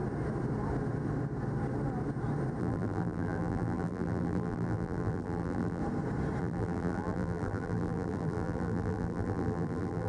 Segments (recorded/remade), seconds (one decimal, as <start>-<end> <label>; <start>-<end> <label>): 0.0-2.6 recorded; 2.6-5.8 remade; 5.8-6.4 recorded; 6.4-10.1 remade